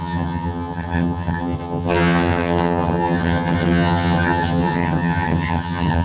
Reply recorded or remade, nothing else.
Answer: remade